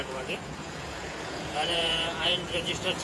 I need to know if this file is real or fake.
fake